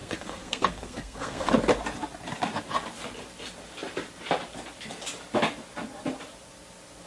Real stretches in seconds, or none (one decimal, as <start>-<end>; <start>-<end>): 1.5-7.1